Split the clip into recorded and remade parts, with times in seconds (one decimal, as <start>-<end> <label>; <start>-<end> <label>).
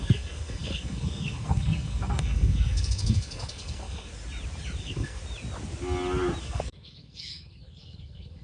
0.0-4.1 remade; 4.1-4.8 recorded; 4.8-5.2 remade; 5.2-6.4 recorded; 6.4-8.4 remade